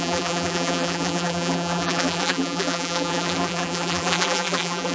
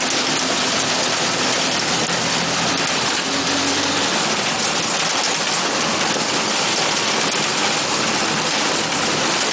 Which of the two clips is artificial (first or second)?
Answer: first